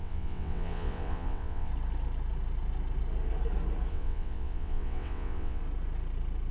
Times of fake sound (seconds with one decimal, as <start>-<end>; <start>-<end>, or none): 0.0-1.7; 3.9-5.6